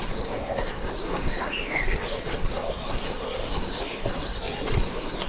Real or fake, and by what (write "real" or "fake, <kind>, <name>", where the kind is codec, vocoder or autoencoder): fake, codec, SNAC